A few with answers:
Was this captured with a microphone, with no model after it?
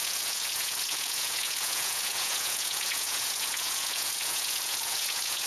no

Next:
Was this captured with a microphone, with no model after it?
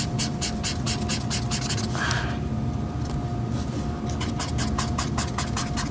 yes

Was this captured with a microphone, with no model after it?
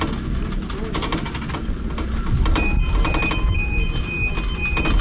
yes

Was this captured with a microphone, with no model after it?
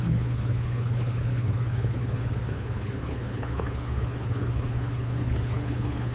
no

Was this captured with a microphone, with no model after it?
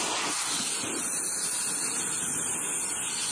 yes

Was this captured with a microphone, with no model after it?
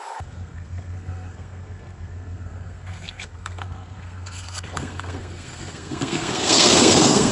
no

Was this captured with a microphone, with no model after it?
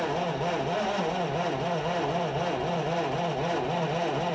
yes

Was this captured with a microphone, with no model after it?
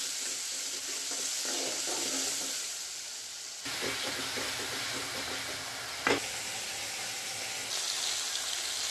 yes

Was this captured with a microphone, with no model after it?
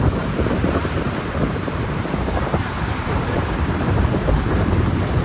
no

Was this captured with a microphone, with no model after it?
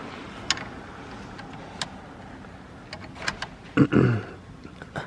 yes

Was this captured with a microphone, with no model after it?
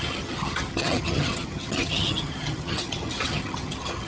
no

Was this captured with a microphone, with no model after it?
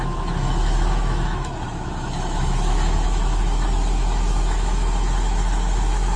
no